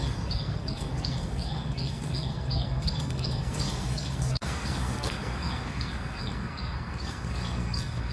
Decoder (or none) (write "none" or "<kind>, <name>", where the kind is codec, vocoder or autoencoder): codec, SNAC